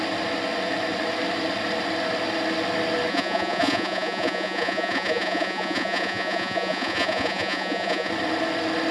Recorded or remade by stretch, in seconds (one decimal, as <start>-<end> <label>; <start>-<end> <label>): 0.0-3.1 recorded; 3.1-8.1 remade; 8.1-8.9 recorded